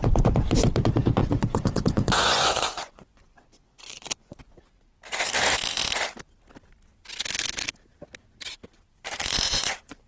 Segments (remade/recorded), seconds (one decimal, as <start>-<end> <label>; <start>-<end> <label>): 0.0-1.2 recorded; 1.2-4.4 remade; 4.4-9.2 recorded; 9.2-10.1 remade